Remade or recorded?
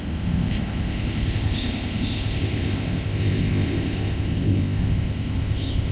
remade